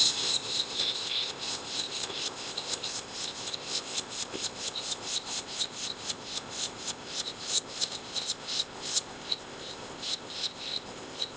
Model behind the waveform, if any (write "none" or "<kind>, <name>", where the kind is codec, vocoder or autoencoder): codec, ZipCodec